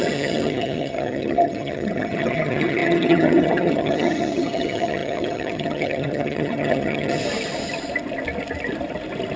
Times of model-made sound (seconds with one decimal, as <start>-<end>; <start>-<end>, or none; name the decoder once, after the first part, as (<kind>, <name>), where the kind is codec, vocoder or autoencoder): 0.0-7.2 (vocoder, HiFi-GAN)